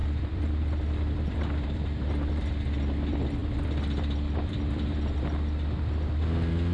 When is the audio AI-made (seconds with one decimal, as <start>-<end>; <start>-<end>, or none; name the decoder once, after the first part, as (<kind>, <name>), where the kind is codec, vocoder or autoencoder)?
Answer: 0.0-2.3 (vocoder, BigVGAN v2); 3.4-5.2